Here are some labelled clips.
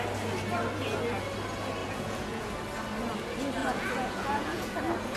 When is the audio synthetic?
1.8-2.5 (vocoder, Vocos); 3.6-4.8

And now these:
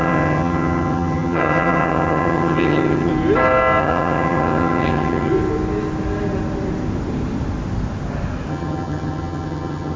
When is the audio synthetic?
0.0-3.1 (vocoder, HiFi-GAN); 3.8-5.3; 8.5-10.0